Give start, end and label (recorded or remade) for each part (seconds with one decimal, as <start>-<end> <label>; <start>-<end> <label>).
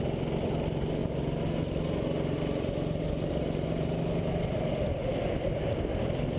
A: 0.0-6.4 recorded